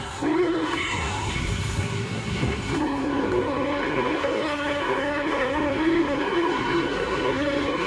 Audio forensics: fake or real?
fake